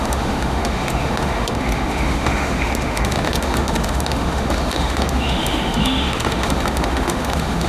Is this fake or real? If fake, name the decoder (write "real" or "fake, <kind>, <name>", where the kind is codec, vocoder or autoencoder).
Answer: fake, autoencoder, DAC-VAE